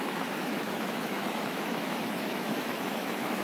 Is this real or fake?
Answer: fake